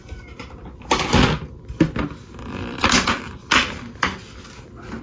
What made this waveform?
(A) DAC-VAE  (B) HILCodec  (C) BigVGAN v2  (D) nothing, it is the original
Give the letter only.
D